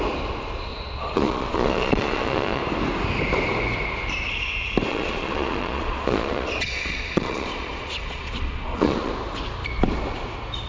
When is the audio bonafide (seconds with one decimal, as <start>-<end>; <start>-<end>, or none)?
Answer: 0.0-0.7; 2.6-4.9; 9.1-10.7